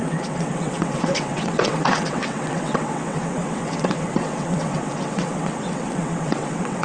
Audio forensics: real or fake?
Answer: fake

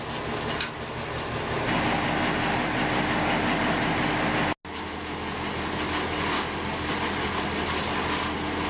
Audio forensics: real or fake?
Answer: real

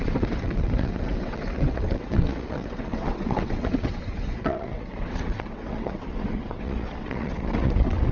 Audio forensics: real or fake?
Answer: fake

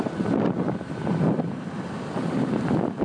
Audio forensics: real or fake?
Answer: real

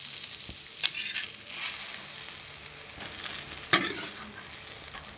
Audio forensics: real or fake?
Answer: real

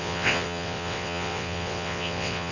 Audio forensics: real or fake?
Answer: fake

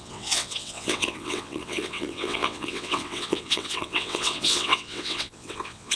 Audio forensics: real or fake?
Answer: fake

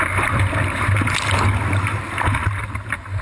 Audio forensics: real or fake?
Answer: real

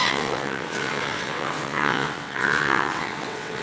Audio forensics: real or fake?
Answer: fake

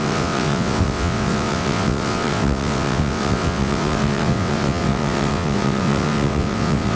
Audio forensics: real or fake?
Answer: fake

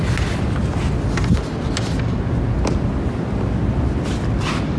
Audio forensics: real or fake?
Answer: real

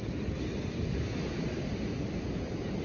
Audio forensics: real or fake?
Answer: real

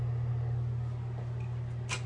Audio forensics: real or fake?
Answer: real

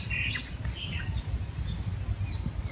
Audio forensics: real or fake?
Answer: real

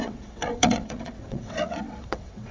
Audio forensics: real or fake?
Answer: fake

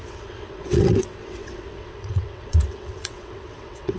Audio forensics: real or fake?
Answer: fake